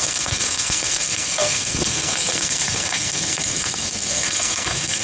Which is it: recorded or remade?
remade